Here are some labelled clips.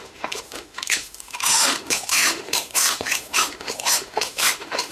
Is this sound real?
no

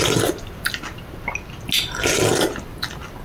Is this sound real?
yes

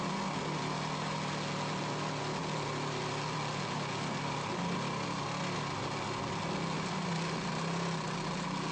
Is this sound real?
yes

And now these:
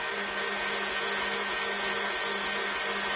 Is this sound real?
yes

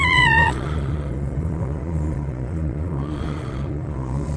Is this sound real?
no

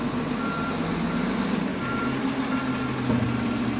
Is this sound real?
yes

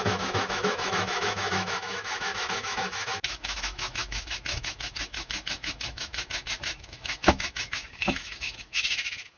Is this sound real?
no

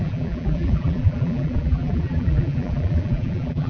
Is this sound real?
no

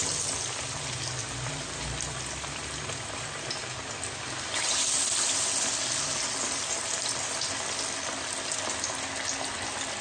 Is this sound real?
yes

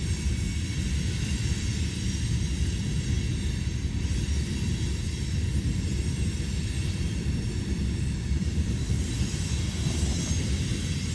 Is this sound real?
yes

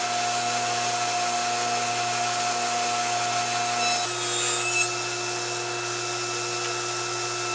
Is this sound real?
yes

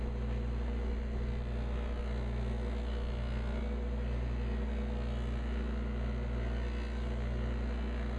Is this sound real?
yes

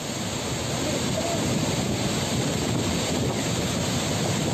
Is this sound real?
yes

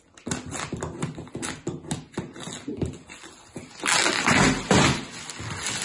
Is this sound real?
yes